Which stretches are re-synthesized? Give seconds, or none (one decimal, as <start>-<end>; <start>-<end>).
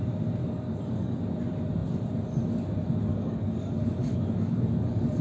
0.4-1.2; 3.1-5.2